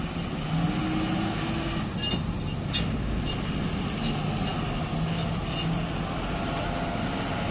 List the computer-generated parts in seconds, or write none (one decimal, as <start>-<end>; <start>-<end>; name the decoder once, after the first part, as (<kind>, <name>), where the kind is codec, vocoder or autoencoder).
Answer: none